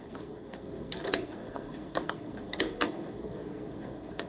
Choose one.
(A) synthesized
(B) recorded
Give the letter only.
A